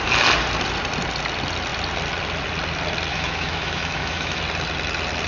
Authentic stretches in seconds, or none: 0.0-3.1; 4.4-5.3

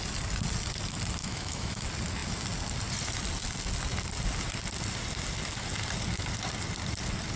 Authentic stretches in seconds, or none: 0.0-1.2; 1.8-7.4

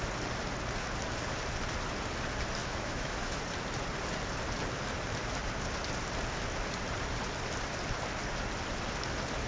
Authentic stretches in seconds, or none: 0.0-2.6; 3.4-9.5

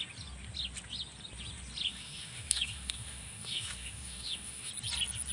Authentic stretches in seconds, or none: 0.0-1.9; 4.7-5.3

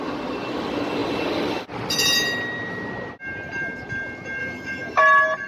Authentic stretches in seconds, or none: 0.0-4.4; 5.0-5.5

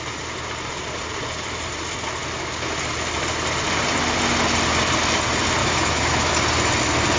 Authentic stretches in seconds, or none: 0.0-5.6; 6.3-7.2